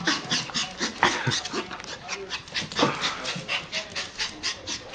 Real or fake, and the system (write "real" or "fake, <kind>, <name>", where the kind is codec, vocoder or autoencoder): real